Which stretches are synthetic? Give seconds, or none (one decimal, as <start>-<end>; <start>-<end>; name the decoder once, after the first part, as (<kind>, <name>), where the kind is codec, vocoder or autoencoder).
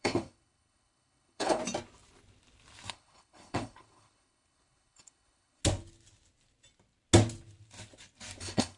0.0-1.6 (codec, HILCodec); 2.9-5.6; 8.4-8.8